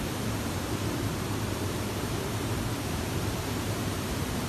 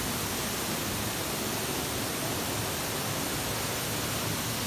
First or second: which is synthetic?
first